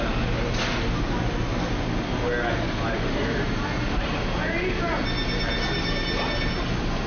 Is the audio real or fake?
real